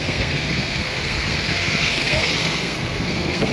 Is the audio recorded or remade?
remade